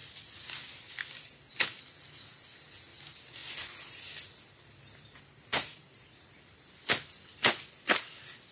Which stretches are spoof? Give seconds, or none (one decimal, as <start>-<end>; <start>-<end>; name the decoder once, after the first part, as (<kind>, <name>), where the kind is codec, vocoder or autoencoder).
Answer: 0.0-1.8 (vocoder, BigVGAN v2); 3.4-4.0; 5.5-6.8